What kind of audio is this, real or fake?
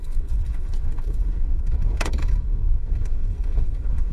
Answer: fake